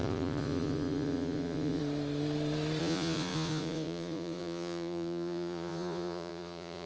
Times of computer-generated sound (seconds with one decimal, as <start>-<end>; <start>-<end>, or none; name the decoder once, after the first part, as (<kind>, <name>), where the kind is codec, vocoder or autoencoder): 0.0-1.8 (vocoder, Vocos); 2.8-6.9